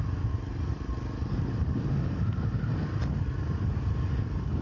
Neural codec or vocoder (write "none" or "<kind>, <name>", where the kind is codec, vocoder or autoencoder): none